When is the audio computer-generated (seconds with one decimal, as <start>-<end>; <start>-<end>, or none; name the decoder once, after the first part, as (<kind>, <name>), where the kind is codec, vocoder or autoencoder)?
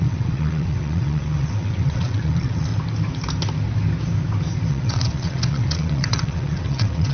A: 0.0-2.7 (vocoder, WaveNeXt); 4.7-7.1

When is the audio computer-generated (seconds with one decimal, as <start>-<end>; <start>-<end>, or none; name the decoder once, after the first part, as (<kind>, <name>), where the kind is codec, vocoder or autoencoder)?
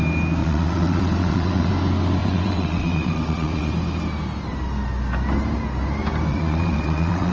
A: 0.4-1.7 (vocoder, WaveNeXt); 2.2-3.7; 6.3-7.3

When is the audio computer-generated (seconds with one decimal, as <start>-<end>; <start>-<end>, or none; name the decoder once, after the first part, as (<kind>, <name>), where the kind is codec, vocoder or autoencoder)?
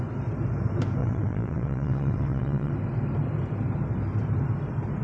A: 1.0-2.7 (vocoder, WaveNeXt)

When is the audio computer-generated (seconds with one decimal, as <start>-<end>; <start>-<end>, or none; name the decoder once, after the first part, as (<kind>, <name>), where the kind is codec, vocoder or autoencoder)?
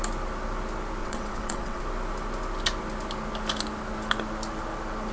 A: 1.0-1.8 (vocoder, WaveNeXt)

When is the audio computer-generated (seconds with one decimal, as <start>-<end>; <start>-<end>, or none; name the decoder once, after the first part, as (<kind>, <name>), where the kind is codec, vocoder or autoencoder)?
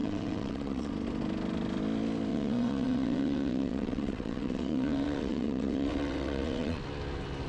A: 0.0-0.9 (vocoder, WaveNeXt); 2.3-6.8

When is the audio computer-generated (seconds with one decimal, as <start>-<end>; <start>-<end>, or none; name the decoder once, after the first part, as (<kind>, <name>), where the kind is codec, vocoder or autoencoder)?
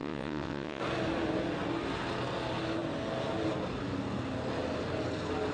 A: 0.0-0.8 (vocoder, WaveNeXt)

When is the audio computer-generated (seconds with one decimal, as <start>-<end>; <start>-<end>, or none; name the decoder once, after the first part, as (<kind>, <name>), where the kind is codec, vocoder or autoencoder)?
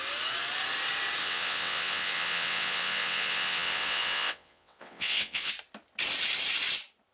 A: 1.2-5.5 (vocoder, WaveNeXt)